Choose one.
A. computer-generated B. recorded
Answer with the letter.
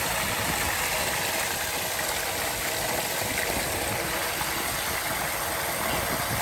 B